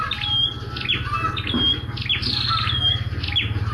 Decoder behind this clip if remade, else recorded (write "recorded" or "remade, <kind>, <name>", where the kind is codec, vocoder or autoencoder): recorded